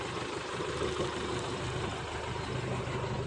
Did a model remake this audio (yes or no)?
no